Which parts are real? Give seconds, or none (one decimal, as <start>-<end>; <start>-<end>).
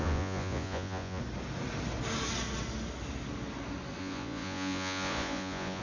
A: 1.2-4.0